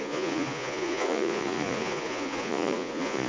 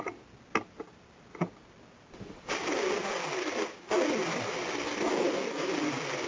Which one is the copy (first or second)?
first